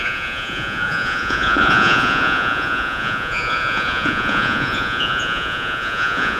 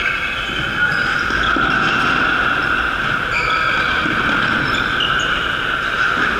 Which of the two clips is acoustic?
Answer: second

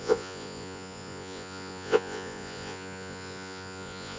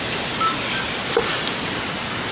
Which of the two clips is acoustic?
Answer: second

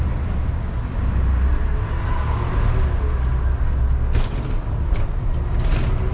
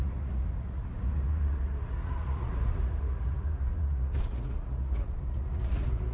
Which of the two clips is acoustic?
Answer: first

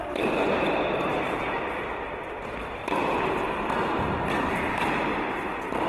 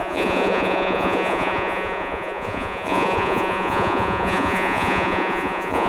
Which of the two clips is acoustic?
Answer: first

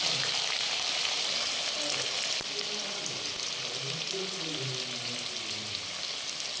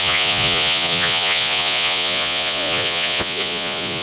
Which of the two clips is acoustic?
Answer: first